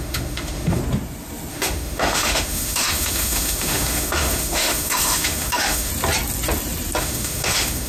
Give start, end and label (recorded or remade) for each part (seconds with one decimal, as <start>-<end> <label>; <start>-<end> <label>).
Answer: 0.0-0.8 remade; 0.8-1.5 recorded; 1.5-5.9 remade; 5.9-7.0 recorded; 7.0-7.9 remade